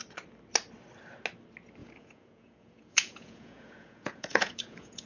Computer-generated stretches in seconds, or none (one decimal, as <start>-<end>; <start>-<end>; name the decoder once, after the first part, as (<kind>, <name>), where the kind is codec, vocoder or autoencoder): 1.8-5.1 (vocoder, Vocos)